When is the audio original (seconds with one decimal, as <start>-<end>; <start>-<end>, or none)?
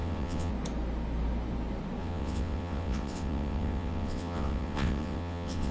0.5-2.0